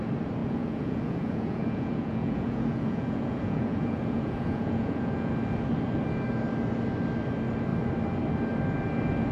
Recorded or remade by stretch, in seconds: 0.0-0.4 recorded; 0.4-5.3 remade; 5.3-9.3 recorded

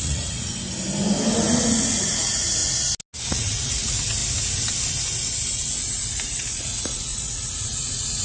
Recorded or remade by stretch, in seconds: 0.0-0.5 remade; 0.5-1.6 recorded; 1.6-2.6 remade; 2.6-3.3 recorded; 3.3-4.2 remade; 4.2-5.5 recorded; 5.5-8.2 remade

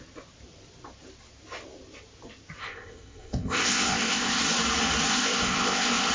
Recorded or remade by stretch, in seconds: 0.0-2.6 recorded; 2.6-4.4 remade; 4.4-5.1 recorded; 5.1-6.1 remade

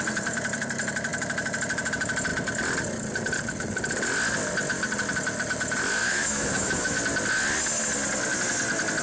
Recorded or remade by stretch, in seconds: 0.0-6.0 recorded; 6.0-7.0 remade; 7.0-9.0 recorded

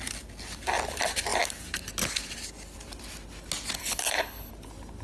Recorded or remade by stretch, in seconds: 0.0-3.8 recorded; 3.8-4.5 remade; 4.5-5.0 recorded